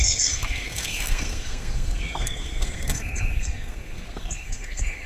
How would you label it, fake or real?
fake